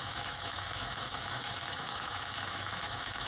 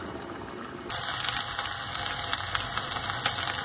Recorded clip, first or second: second